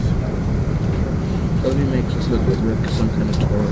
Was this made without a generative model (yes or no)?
yes